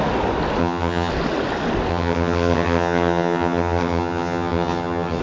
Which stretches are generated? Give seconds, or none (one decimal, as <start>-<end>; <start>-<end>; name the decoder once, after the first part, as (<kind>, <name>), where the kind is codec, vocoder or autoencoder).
0.6-1.1 (vocoder, HiFi-GAN); 1.9-5.2